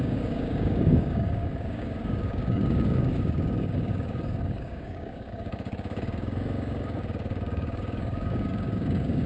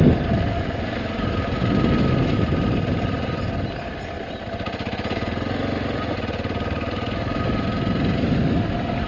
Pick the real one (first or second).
second